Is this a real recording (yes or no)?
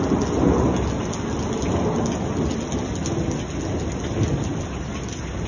yes